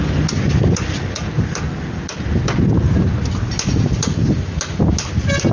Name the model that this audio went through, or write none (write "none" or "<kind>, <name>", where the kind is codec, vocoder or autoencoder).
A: none